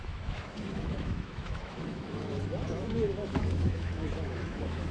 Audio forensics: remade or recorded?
remade